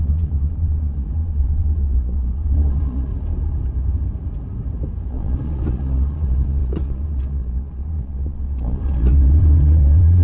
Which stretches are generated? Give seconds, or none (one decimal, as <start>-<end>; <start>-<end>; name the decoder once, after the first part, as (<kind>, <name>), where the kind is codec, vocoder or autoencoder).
0.0-3.1 (vocoder, Vocos); 5.1-10.2